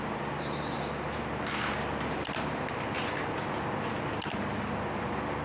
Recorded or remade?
recorded